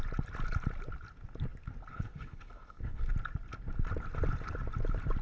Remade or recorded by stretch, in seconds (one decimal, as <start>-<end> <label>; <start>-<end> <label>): 0.0-1.9 recorded; 1.9-3.1 remade; 3.1-5.2 recorded